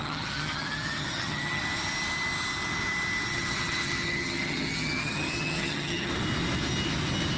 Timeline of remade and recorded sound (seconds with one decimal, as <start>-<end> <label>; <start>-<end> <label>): 0.0-1.6 remade; 1.6-3.3 recorded; 3.3-6.1 remade; 6.1-7.4 recorded